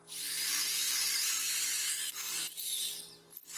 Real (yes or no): yes